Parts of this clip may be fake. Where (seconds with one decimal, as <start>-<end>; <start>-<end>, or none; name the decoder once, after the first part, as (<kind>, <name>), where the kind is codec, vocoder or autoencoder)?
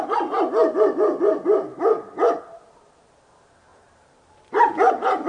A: 3.7-5.3 (vocoder, BigVGAN v2)